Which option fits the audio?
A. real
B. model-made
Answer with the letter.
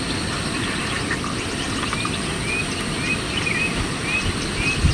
A